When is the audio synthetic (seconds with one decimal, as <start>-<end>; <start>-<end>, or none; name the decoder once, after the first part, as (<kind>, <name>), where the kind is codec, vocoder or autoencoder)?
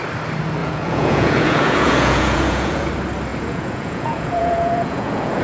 0.6-2.9 (vocoder, Vocos); 3.3-5.4